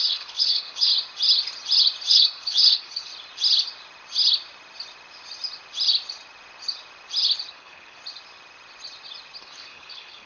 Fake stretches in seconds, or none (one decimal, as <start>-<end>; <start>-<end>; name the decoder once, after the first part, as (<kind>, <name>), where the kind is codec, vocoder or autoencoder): 0.0-0.9 (codec, HILCodec); 2.1-3.1; 7.5-8.0; 9.4-10.3